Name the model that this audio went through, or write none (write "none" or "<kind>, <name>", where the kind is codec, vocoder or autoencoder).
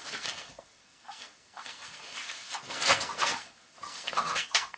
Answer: codec, SNAC